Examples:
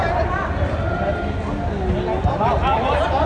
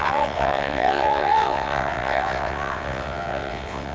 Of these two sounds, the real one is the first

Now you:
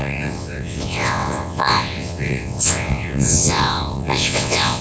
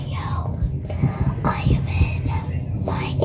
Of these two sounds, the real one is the second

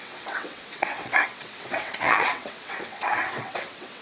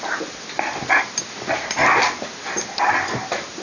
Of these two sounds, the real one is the second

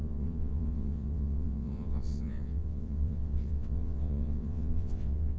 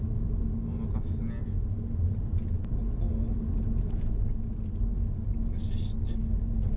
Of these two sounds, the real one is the second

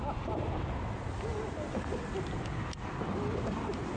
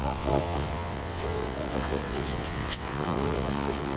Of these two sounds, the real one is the first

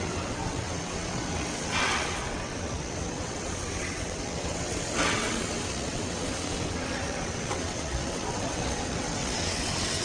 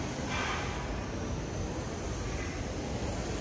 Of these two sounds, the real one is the second